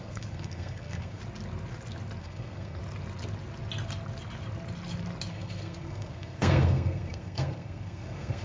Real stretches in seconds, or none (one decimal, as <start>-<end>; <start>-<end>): 1.2-2.2; 2.8-5.3